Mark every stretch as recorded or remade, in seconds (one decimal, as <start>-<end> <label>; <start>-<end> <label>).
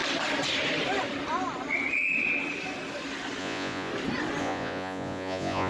0.0-3.4 recorded; 3.4-3.9 remade; 3.9-4.4 recorded; 4.4-5.7 remade